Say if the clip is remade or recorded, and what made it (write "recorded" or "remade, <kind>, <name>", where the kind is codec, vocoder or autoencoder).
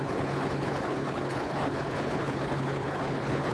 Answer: remade, codec, HILCodec